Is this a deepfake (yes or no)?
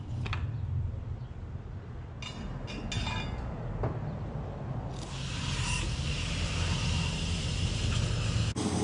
no